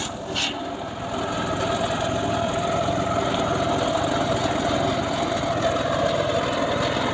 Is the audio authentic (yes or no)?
yes